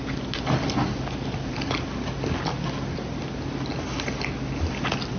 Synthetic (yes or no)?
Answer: no